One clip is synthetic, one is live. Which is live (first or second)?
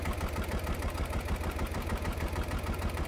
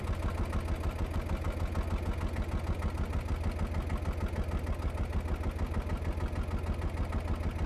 second